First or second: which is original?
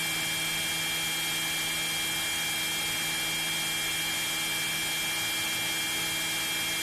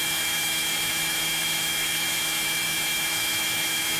first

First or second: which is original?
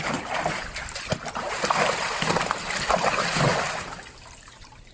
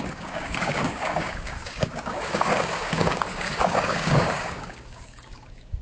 first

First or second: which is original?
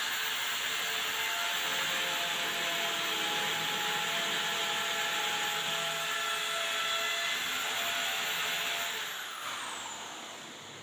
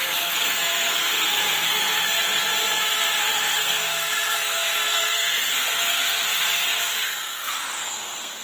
first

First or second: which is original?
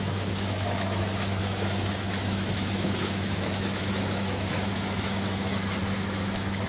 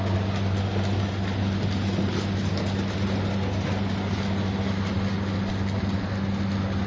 second